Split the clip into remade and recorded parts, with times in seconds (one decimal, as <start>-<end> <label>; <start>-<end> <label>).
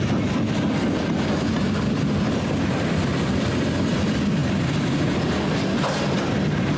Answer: 0.0-6.8 recorded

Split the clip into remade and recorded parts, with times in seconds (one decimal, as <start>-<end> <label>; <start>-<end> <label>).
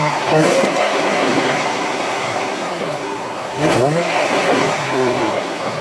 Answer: 0.0-5.8 remade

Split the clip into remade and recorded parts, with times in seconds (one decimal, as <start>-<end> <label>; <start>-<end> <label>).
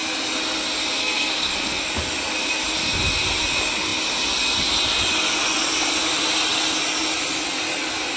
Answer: 0.0-1.0 recorded; 1.0-1.9 remade; 1.9-8.2 recorded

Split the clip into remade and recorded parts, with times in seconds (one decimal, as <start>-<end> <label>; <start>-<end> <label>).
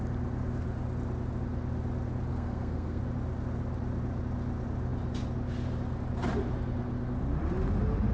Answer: 0.0-2.3 recorded; 2.3-3.0 remade; 3.0-8.1 recorded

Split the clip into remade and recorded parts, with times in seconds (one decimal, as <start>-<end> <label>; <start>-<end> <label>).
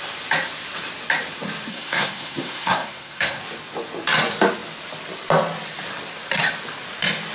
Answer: 0.0-1.7 recorded; 1.7-3.4 remade; 3.4-7.3 recorded